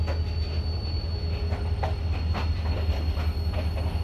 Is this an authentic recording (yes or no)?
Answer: yes